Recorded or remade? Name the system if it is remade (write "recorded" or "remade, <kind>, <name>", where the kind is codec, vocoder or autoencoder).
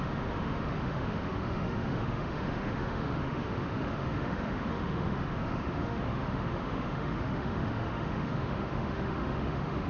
remade, autoencoder, DAC-VAE